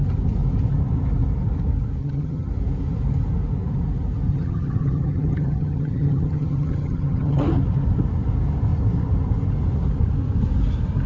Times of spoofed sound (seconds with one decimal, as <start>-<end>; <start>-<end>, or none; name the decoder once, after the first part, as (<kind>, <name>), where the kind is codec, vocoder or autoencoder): 2.0-2.5 (vocoder, HiFi-GAN); 4.3-7.4